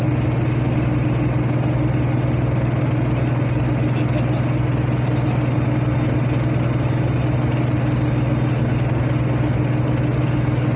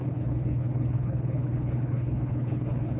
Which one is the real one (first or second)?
first